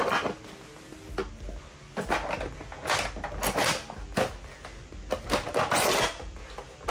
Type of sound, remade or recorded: recorded